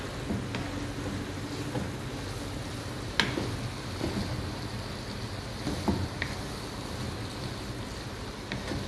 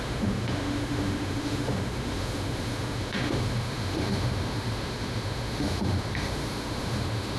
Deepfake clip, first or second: second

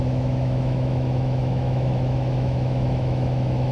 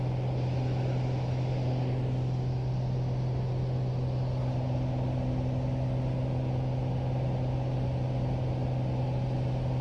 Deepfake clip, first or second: first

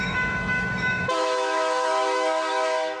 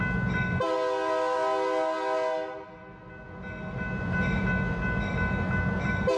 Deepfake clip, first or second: first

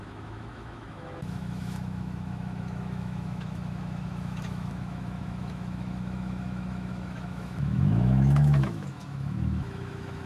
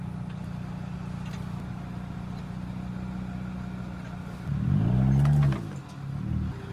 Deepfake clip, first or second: first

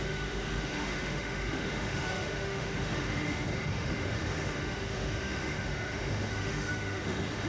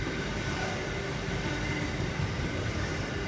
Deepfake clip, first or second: first